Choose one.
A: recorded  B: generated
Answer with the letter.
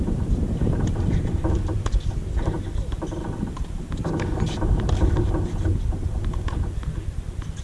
A